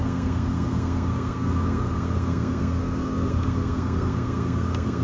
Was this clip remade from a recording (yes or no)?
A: yes